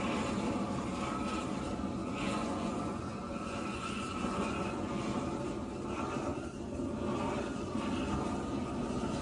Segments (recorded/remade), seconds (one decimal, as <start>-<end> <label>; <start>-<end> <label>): 0.0-2.0 recorded; 2.0-5.0 remade; 5.0-9.2 recorded